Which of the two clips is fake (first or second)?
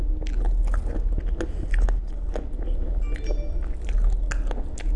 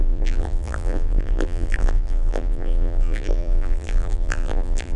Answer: second